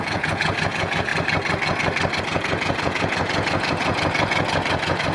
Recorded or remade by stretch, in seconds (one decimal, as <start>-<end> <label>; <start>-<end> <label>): 0.0-1.1 remade; 1.1-2.2 recorded; 2.2-5.1 remade